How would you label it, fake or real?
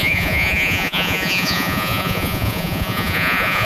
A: fake